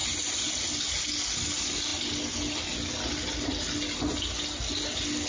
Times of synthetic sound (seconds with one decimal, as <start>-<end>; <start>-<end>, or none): none